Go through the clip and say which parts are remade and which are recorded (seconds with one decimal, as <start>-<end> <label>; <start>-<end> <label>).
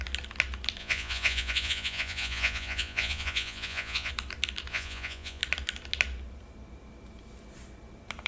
0.0-0.8 recorded; 0.8-4.1 remade; 4.1-4.7 recorded; 4.7-5.4 remade; 5.4-8.3 recorded